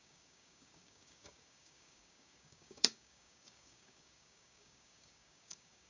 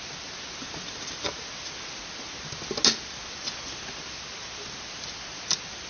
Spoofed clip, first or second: first